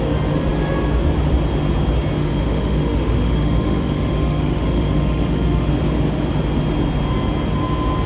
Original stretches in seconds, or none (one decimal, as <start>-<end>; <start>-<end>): 0.0-2.2; 5.7-8.1